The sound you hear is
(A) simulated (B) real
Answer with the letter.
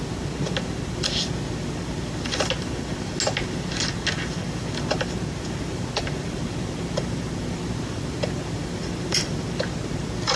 B